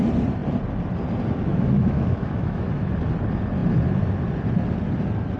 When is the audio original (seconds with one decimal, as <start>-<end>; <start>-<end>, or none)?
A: 0.0-1.5; 2.9-5.4